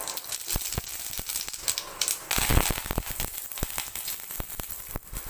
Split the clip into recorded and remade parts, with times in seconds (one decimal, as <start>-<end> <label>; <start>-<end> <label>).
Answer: 0.0-5.3 recorded